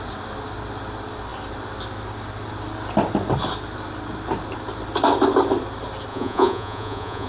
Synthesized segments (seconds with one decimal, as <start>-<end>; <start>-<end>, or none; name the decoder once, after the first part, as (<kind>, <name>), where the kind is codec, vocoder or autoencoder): 6.1-7.3 (vocoder, Vocos)